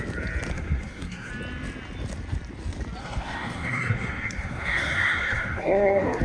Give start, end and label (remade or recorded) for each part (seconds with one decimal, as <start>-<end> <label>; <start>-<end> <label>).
0.0-0.5 recorded; 0.5-1.3 remade; 1.3-3.0 recorded; 3.0-6.2 remade